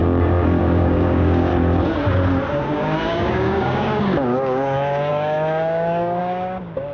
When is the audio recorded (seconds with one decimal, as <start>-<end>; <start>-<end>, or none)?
0.0-0.6; 1.5-2.5